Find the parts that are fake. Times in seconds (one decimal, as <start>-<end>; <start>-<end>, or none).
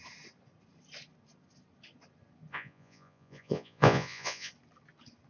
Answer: 2.5-4.5